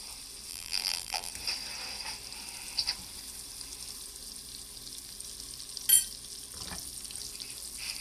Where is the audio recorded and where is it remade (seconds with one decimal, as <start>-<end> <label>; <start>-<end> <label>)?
0.0-0.5 recorded; 0.5-1.3 remade; 1.3-8.0 recorded